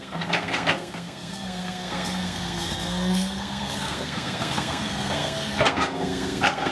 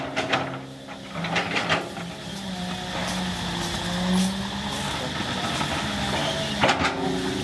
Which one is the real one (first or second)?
second